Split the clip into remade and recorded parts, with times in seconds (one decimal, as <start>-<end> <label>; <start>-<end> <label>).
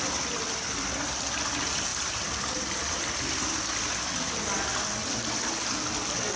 0.0-6.4 recorded